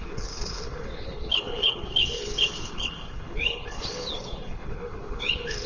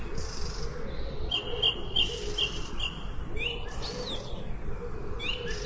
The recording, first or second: second